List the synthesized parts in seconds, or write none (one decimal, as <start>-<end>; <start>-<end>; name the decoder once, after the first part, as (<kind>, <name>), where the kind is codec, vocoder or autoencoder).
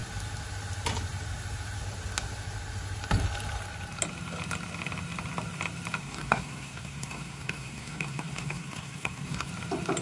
6.0-9.5 (codec, SNAC)